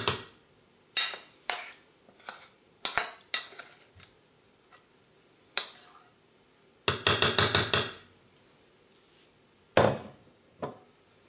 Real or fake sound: real